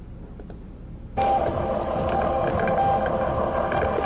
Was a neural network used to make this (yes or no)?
no